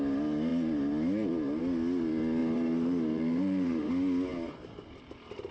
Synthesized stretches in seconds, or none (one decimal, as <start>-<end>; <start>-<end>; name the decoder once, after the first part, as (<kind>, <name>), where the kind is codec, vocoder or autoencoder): 2.4-3.9 (vocoder, BigVGAN v2)